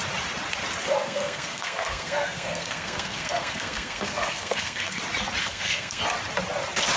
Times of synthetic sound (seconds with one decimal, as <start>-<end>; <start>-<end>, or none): 0.8-5.0; 5.4-6.0